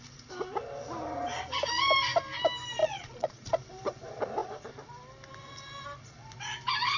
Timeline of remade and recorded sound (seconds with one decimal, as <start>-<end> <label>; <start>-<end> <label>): 0.0-2.8 recorded; 2.8-3.5 remade; 3.5-7.0 recorded